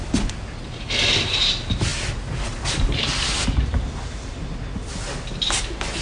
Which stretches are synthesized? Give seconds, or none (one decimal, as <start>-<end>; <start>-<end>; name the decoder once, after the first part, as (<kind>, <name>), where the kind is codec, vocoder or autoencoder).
none

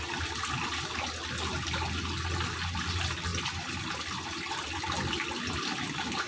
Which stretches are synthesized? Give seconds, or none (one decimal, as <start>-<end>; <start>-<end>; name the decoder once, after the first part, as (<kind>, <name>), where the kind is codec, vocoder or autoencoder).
none

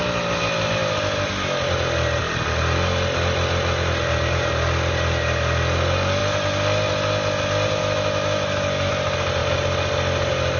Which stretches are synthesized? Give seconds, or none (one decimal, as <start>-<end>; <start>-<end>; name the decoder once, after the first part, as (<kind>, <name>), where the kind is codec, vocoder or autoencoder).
7.8-8.9 (autoencoder, DAC-VAE)

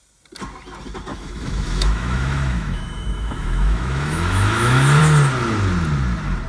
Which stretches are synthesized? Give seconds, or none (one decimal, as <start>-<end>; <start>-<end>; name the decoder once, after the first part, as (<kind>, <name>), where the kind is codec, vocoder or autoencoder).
1.1-5.0 (autoencoder, DAC-VAE)

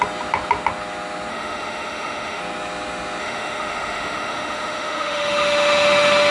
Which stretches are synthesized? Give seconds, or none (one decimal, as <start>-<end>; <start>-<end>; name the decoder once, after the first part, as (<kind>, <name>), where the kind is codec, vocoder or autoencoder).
1.3-2.4 (autoencoder, DAC-VAE); 3.2-6.3

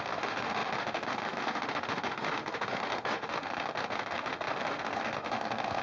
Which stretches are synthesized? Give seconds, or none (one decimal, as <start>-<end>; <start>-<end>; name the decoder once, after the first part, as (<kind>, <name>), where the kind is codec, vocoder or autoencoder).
0.0-5.8 (autoencoder, DAC-VAE)